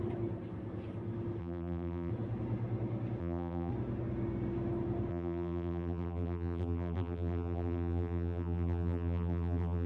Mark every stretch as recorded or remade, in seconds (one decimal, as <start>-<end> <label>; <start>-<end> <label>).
0.0-1.4 recorded; 1.4-2.1 remade; 2.1-3.2 recorded; 3.2-3.7 remade; 3.7-5.1 recorded; 5.1-9.9 remade